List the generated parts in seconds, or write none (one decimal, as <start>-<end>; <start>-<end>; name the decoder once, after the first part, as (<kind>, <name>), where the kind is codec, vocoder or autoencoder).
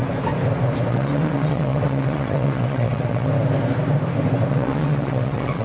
0.9-3.3 (vocoder, WaveNeXt); 4.5-5.6